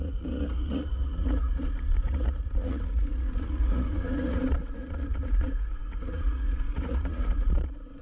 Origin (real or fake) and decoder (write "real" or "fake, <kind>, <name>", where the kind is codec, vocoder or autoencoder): fake, vocoder, Vocos